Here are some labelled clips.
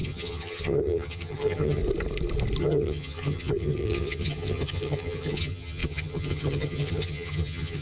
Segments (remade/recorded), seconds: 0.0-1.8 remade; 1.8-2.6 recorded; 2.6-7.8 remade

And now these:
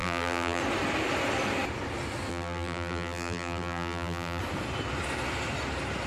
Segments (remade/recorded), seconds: 0.0-0.6 remade; 0.6-2.3 recorded; 2.3-4.4 remade; 4.4-6.1 recorded

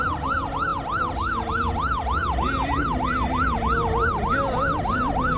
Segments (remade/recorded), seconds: 0.0-5.4 recorded

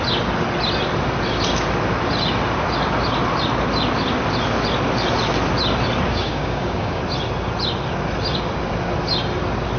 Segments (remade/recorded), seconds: 0.0-6.1 recorded; 6.1-7.0 remade; 7.0-9.8 recorded

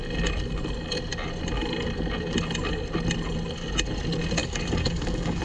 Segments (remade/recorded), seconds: 0.0-4.4 recorded; 4.4-5.4 remade

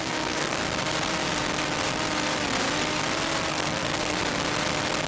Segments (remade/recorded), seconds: 0.0-0.6 remade; 0.6-3.5 recorded; 3.5-4.2 remade; 4.2-5.1 recorded